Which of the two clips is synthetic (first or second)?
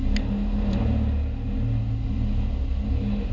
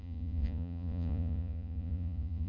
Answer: second